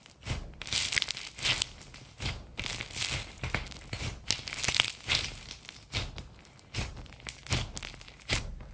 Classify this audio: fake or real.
real